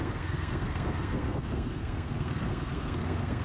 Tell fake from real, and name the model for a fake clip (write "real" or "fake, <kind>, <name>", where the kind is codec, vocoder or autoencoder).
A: fake, codec, SNAC